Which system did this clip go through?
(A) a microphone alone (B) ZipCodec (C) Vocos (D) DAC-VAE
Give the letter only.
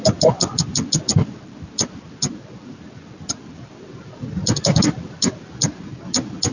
A